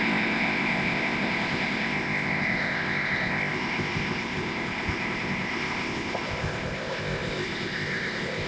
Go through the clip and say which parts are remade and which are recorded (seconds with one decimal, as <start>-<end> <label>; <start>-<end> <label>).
0.0-8.5 remade